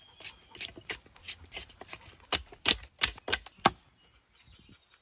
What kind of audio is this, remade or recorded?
recorded